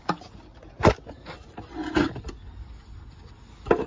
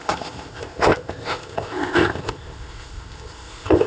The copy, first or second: second